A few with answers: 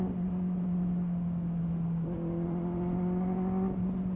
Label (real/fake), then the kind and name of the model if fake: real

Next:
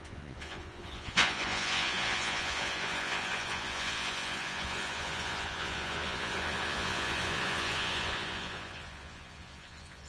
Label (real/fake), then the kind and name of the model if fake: fake, vocoder, Vocos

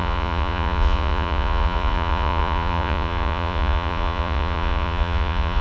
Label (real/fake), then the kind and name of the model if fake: fake, vocoder, Vocos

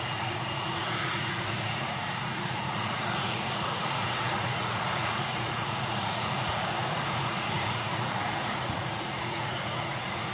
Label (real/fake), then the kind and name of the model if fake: fake, vocoder, Vocos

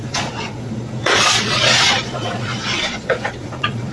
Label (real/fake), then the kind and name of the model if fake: fake, vocoder, Vocos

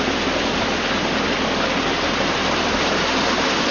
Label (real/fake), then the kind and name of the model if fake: real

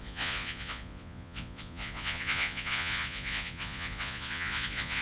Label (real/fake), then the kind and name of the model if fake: fake, vocoder, Vocos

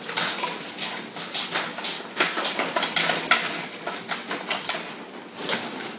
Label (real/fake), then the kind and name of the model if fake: real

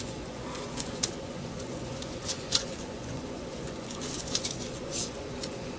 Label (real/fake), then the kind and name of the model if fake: fake, vocoder, Vocos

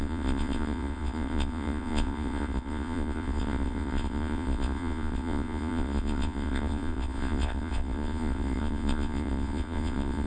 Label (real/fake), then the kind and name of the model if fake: fake, vocoder, Vocos